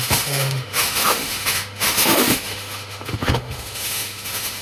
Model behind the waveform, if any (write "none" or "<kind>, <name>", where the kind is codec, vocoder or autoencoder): autoencoder, DAC-VAE